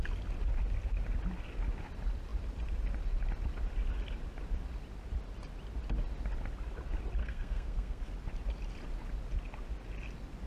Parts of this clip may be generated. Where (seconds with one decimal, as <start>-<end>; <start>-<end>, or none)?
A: 7.2-8.0